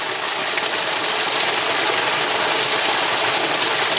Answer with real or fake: real